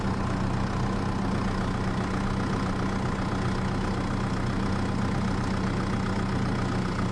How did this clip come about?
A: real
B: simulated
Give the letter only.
A